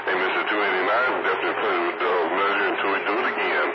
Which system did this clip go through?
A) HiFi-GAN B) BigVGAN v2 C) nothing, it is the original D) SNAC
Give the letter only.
C